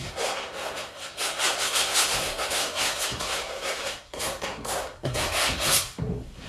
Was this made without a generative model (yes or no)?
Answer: no